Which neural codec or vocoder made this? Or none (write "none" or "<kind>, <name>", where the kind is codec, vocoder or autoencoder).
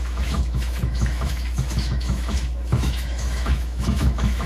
autoencoder, DAC-VAE